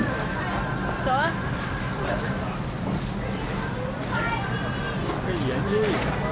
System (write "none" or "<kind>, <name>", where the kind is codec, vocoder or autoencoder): none